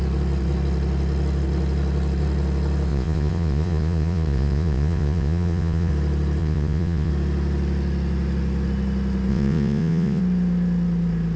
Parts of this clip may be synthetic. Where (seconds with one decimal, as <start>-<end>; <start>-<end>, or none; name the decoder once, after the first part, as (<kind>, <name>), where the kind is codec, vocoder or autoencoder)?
2.9-5.9 (vocoder, Vocos); 6.4-7.1; 9.3-10.2